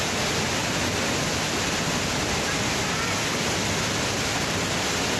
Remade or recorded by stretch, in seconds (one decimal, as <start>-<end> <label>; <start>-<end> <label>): 0.0-5.2 recorded